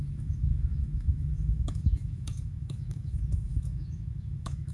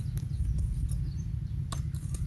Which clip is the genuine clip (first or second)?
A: second